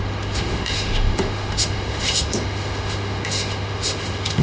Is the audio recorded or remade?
remade